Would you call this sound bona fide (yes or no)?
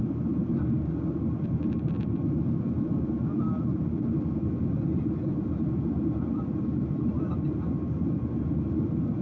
yes